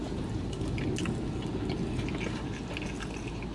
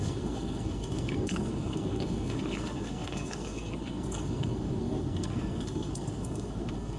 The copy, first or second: second